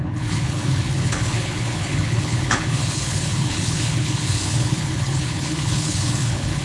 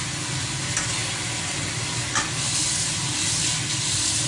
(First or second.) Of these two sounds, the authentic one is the second